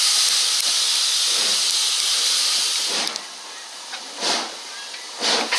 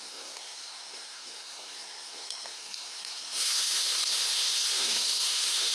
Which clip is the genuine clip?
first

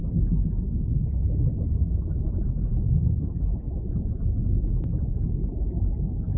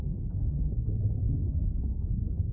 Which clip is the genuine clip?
first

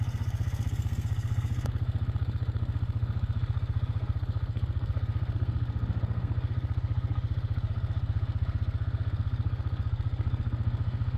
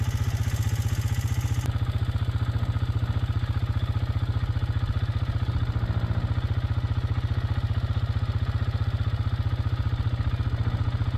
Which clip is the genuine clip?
second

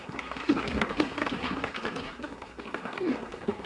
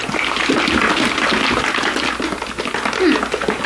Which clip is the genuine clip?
second